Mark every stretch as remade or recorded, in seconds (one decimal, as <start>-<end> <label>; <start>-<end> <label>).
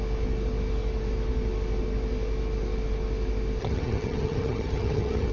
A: 0.0-3.6 recorded; 3.6-5.3 remade